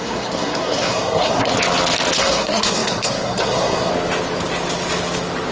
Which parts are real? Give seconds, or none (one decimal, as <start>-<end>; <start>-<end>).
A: 1.5-2.2; 3.9-5.5